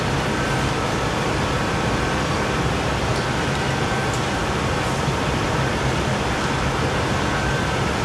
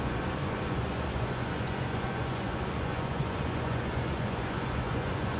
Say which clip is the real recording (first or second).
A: first